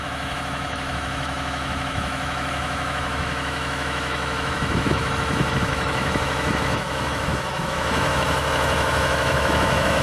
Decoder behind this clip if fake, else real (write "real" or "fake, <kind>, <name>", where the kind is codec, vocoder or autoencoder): fake, autoencoder, DAC-VAE